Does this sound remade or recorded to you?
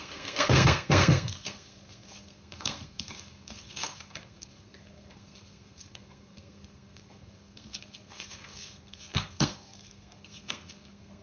remade